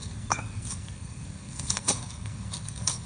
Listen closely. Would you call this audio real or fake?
fake